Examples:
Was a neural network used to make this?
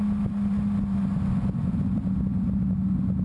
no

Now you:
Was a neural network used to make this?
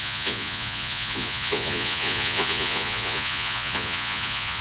yes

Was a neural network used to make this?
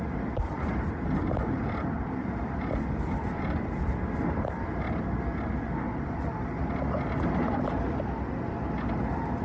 no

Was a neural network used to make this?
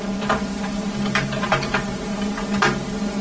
no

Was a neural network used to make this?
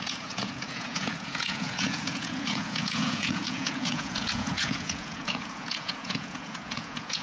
yes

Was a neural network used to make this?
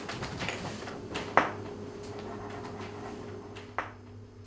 no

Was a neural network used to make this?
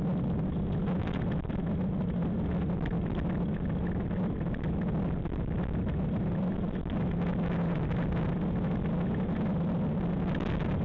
no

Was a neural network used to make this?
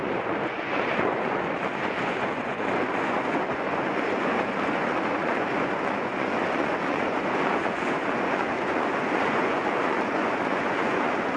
yes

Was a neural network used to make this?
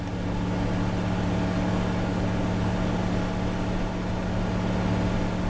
no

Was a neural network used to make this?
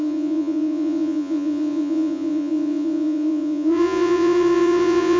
yes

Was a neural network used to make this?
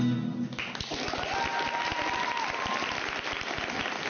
no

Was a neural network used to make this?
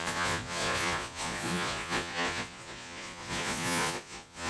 yes